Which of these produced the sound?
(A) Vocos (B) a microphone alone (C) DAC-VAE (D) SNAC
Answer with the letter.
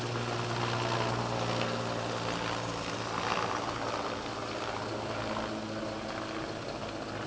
B